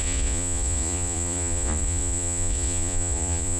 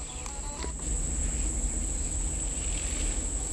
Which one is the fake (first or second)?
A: first